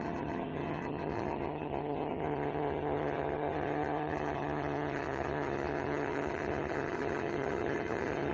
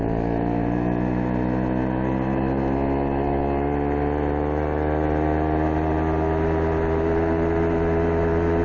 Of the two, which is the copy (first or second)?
first